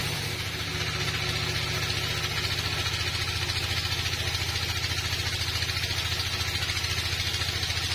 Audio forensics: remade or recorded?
recorded